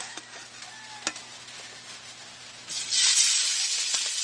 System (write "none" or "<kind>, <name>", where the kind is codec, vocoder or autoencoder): none